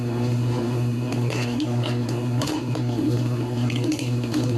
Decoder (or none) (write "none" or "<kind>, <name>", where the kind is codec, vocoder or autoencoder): codec, SNAC